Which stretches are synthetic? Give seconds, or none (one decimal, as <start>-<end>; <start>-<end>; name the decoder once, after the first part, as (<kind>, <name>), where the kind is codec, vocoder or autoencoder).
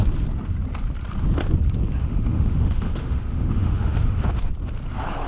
2.0-4.5 (autoencoder, DAC-VAE)